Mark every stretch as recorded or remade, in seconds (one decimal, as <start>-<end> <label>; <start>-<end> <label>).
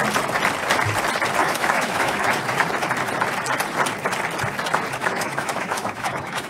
0.0-1.4 recorded; 1.4-2.3 remade; 2.3-5.0 recorded; 5.0-6.5 remade